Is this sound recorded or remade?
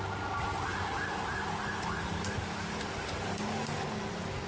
recorded